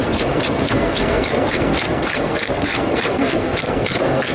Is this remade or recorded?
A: remade